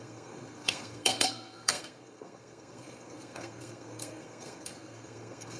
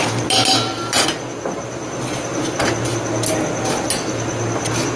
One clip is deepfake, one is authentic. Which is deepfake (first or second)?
first